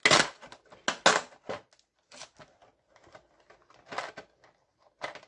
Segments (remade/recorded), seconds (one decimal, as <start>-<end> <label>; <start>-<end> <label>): 0.0-5.3 recorded